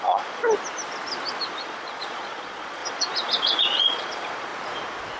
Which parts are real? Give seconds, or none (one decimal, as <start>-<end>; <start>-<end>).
0.4-1.6; 4.5-5.2